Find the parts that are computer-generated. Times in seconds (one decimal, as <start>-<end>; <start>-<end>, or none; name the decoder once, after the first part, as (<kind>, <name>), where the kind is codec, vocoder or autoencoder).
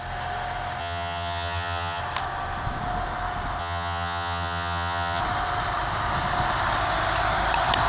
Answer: 0.8-2.0 (vocoder, HiFi-GAN); 3.6-5.2